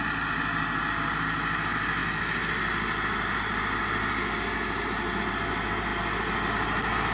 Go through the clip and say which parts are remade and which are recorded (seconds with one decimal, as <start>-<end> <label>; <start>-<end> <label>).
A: 0.0-7.1 recorded